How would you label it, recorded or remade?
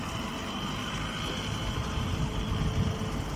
recorded